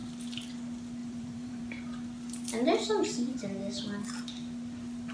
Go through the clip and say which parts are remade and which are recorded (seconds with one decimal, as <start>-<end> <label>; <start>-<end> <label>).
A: 0.0-1.0 recorded; 1.0-1.7 remade; 1.7-5.1 recorded